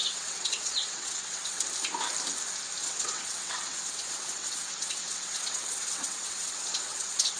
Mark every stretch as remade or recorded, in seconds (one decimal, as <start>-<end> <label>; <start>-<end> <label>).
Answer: 0.0-1.6 remade; 1.6-2.8 recorded; 2.8-7.4 remade